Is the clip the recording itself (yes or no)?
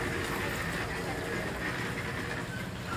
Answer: yes